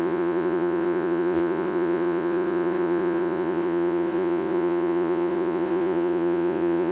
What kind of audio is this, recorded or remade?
remade